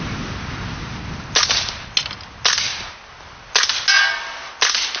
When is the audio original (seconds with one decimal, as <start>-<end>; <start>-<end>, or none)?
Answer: 0.0-5.0